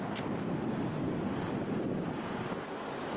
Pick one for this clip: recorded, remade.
recorded